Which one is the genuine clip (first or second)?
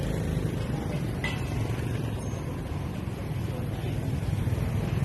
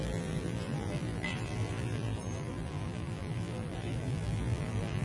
first